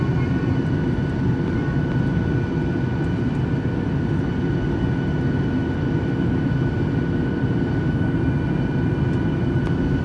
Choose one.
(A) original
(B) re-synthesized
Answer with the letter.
A